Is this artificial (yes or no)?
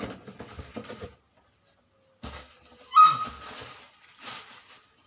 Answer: no